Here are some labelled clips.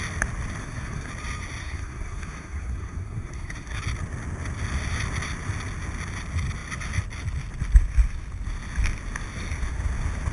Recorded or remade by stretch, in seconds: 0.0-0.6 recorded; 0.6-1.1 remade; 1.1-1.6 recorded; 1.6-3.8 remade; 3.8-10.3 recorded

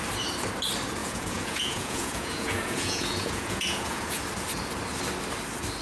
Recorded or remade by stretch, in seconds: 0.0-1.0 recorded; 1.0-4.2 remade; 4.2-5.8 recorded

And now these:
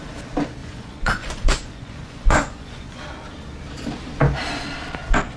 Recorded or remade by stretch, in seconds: 0.0-0.6 recorded; 0.6-3.0 remade; 3.0-5.4 recorded